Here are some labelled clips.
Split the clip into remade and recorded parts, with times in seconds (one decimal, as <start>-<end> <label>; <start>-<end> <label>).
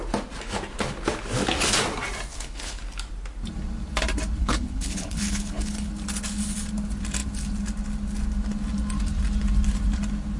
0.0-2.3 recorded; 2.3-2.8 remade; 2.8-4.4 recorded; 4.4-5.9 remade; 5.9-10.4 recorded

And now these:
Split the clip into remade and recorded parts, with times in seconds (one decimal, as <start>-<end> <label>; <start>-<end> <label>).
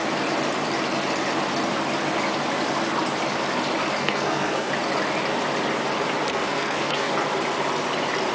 0.0-4.0 recorded; 4.0-4.7 remade; 4.7-6.3 recorded; 6.3-7.1 remade; 7.1-8.3 recorded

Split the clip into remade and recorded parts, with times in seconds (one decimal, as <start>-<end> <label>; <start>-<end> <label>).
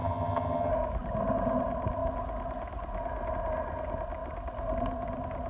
0.0-0.7 remade; 0.7-5.5 recorded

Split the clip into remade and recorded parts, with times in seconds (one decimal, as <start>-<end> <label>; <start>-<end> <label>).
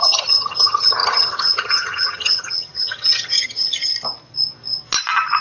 0.0-3.9 remade; 3.9-5.4 recorded